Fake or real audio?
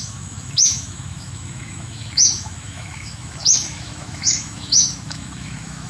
fake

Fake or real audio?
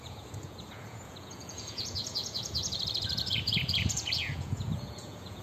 fake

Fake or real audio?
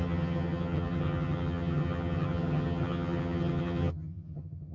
fake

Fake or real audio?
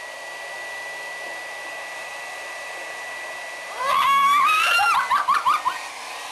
real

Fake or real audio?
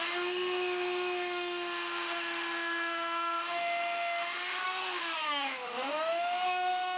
fake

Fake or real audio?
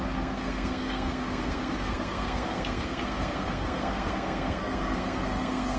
fake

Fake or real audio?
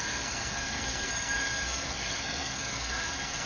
fake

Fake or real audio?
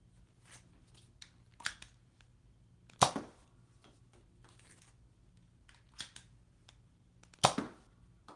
real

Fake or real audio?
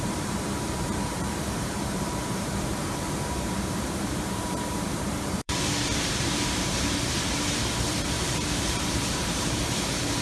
fake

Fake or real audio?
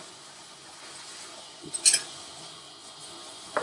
fake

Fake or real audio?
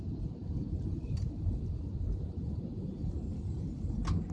real